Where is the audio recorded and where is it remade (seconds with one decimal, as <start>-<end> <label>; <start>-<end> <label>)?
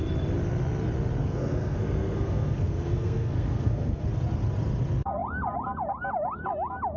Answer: 0.0-1.2 recorded; 1.2-4.0 remade; 4.0-7.0 recorded